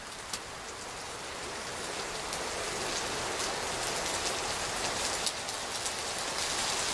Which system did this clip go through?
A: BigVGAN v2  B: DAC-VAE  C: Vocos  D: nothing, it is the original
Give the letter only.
D